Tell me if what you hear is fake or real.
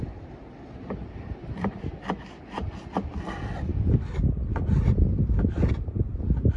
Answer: real